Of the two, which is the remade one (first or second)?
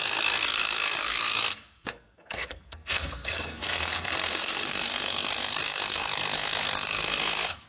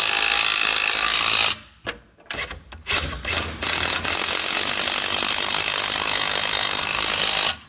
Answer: first